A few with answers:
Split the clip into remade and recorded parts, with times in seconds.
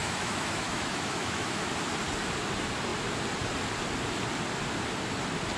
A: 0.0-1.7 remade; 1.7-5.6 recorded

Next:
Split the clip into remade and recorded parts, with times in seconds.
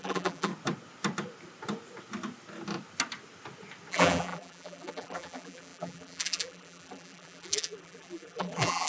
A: 0.0-0.5 remade; 0.5-3.9 recorded; 3.9-8.9 remade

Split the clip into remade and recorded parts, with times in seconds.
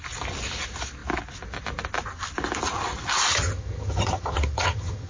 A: 0.0-3.3 recorded; 3.3-5.1 remade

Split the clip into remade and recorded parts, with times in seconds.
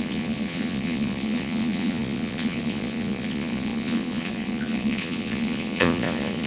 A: 0.0-6.5 remade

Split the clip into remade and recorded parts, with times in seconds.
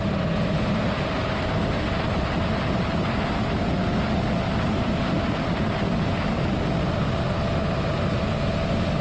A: 0.0-9.0 recorded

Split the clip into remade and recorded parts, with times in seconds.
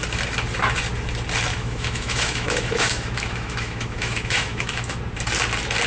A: 0.0-1.5 recorded; 1.5-5.0 remade; 5.0-5.9 recorded